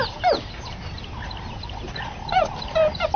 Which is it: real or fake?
real